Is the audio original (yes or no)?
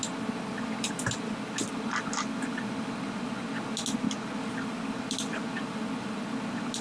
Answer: yes